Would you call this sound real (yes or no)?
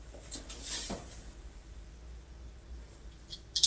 yes